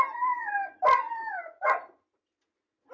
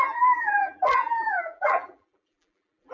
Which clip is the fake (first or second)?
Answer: second